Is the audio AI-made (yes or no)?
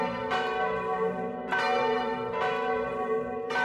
yes